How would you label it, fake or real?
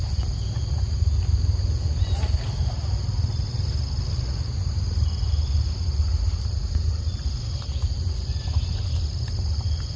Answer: real